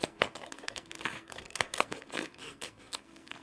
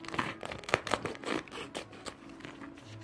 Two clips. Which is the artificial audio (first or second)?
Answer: first